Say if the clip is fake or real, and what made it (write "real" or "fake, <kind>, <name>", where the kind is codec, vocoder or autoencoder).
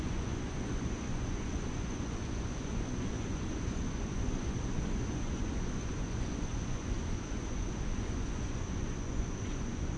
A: fake, vocoder, Vocos